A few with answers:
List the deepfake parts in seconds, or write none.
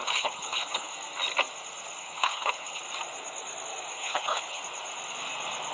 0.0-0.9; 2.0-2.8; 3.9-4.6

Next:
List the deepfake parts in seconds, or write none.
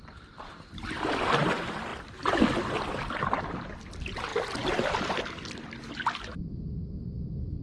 none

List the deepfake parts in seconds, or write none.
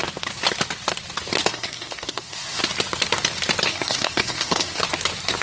1.5-2.6; 3.7-4.8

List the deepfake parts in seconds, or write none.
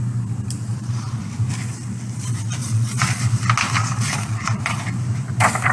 0.7-1.2; 2.6-3.2; 3.8-4.8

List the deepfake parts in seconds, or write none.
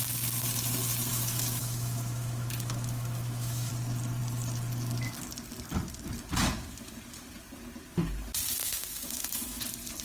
1.1-3.7; 8.6-9.6